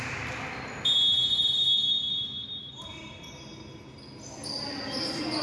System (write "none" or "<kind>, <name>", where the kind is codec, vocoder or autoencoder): none